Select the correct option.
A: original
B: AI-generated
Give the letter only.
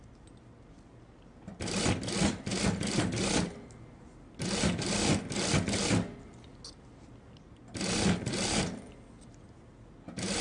A